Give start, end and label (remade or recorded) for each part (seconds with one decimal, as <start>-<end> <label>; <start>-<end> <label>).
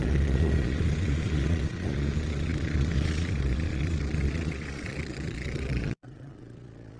0.0-7.0 remade